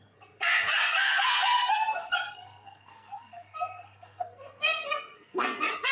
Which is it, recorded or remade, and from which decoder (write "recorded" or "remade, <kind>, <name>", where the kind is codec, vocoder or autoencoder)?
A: remade, codec, SNAC